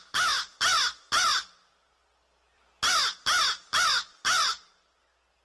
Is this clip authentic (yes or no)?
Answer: yes